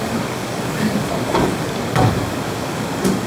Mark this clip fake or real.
fake